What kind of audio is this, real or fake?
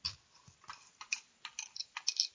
real